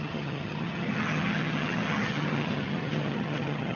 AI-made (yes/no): yes